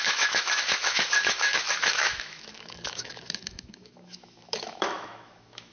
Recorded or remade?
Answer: remade